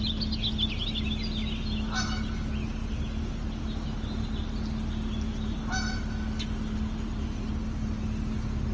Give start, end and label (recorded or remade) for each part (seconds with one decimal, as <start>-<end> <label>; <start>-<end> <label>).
0.0-8.7 recorded